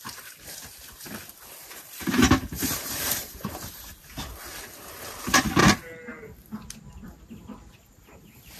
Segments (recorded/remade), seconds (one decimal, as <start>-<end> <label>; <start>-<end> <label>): 0.0-1.6 recorded; 1.6-3.9 remade; 3.9-8.6 recorded